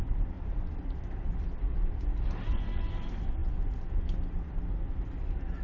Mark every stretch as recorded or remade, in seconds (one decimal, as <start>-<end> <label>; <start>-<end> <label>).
0.0-1.4 remade; 1.4-2.9 recorded; 2.9-3.4 remade; 3.4-4.9 recorded; 4.9-5.6 remade